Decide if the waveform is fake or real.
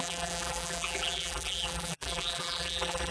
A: fake